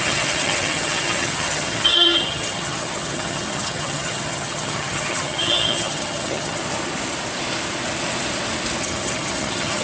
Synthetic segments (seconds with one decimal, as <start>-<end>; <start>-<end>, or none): 0.0-6.6; 8.8-9.8